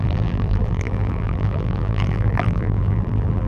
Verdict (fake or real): fake